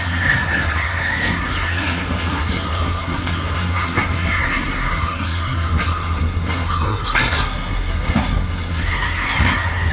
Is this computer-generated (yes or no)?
yes